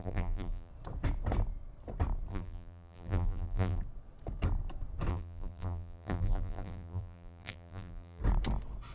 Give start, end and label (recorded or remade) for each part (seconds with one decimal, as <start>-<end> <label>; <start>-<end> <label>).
0.0-0.7 remade; 0.7-2.3 recorded; 2.3-3.8 remade; 3.8-5.1 recorded; 5.1-8.2 remade; 8.2-8.9 recorded